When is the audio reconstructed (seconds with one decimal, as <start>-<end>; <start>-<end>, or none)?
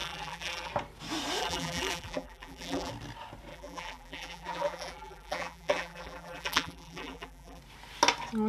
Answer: 0.0-0.7; 1.4-2.9; 3.5-7.6